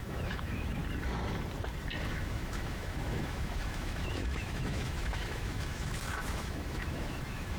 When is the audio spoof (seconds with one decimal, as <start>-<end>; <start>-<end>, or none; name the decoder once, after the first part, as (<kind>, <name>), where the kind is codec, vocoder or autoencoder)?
0.0-0.8 (autoencoder, DAC-VAE); 2.1-7.6